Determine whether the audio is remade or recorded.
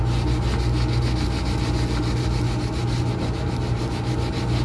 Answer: recorded